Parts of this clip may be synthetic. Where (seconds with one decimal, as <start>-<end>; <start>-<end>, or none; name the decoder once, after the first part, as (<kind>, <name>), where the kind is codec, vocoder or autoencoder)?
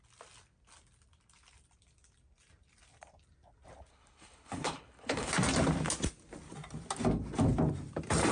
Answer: 3.9-5.3 (codec, HILCodec)